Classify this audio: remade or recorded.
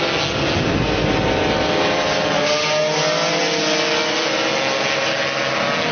recorded